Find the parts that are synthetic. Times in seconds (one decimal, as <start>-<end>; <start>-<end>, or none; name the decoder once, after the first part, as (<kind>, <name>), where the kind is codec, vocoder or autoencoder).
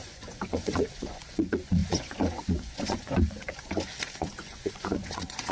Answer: 0.0-5.5 (vocoder, Vocos)